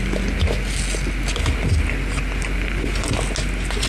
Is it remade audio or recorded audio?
recorded